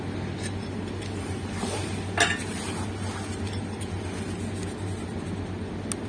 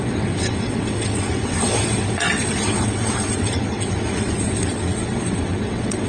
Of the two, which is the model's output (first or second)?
second